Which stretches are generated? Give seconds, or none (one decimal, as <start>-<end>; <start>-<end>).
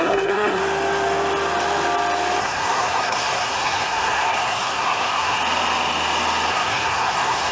0.0-0.6; 2.4-5.4; 6.5-7.5